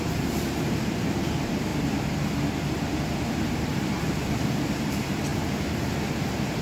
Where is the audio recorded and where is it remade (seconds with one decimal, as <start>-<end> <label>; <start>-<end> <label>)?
0.0-1.7 remade; 1.7-3.3 recorded; 3.3-6.6 remade